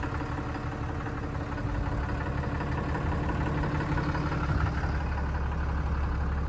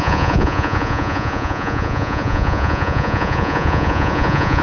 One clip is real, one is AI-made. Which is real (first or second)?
first